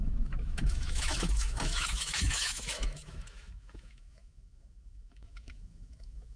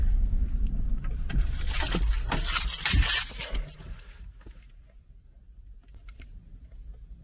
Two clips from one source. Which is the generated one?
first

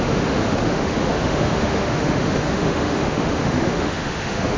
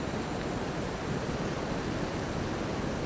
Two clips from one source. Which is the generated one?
first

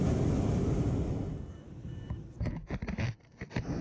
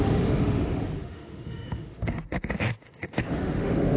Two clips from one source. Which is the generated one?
second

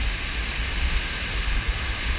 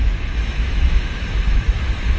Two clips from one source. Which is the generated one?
second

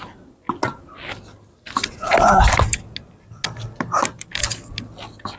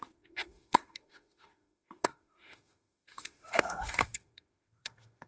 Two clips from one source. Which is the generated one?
second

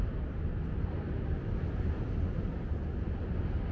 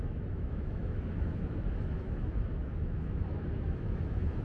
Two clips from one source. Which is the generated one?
second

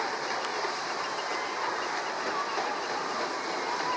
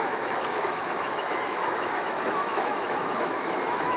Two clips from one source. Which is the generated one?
second